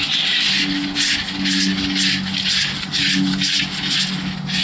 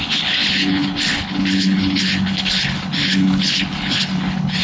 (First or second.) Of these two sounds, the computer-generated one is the second